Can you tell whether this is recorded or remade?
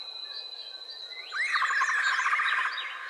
recorded